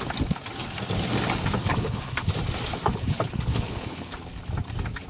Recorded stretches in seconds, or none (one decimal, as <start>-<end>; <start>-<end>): 0.0-1.6; 2.3-2.9; 4.1-5.1